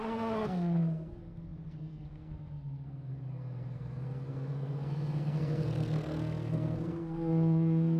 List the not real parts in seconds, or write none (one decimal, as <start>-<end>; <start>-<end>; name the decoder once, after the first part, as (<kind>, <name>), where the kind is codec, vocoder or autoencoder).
0.0-8.0 (codec, SNAC)